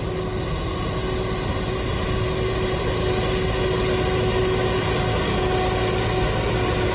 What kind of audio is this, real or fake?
real